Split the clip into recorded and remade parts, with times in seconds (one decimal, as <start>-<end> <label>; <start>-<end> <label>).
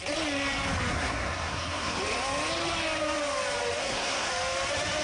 0.0-0.9 recorded; 0.9-2.0 remade; 2.0-3.8 recorded; 3.8-4.3 remade; 4.3-5.0 recorded